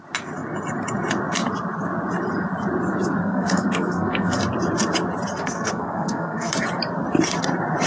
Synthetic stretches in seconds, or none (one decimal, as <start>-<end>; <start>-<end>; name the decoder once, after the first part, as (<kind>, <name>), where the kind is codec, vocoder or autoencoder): 3.2-4.4 (codec, SNAC); 5.4-6.5